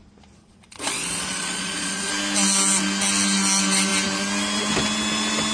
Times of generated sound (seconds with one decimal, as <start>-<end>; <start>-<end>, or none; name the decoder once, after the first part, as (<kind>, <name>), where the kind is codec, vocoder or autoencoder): 0.4-2.1 (vocoder, Vocos)